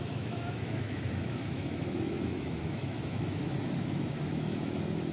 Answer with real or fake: fake